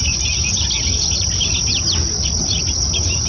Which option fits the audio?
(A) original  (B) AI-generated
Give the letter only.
A